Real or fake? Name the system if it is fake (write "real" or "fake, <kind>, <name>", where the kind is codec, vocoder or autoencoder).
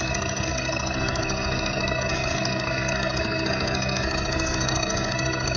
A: fake, codec, SNAC